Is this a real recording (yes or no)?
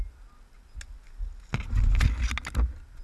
yes